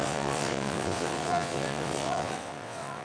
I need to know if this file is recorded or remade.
remade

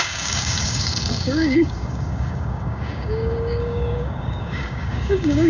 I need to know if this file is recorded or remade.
remade